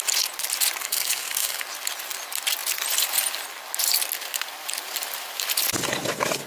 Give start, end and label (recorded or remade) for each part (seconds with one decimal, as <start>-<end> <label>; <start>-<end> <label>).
0.0-0.8 recorded; 0.8-1.6 remade; 1.6-6.5 recorded